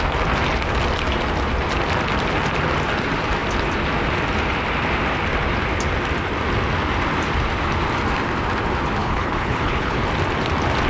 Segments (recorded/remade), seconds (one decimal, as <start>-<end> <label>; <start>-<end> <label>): 0.0-9.0 recorded; 9.0-10.0 remade; 10.0-10.9 recorded